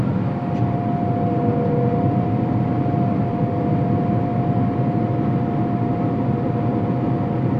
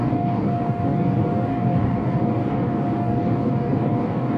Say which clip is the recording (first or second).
first